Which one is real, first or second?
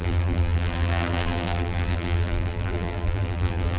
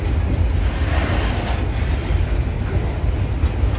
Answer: second